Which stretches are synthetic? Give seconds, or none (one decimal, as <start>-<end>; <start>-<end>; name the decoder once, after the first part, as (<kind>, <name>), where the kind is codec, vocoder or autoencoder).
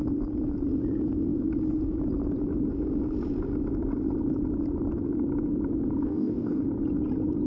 6.1-6.6 (codec, DAC)